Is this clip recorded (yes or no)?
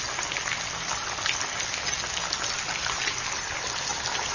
yes